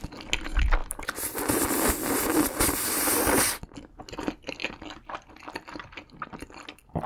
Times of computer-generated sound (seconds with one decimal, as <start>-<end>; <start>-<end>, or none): 0.8-2.2; 4.6-5.3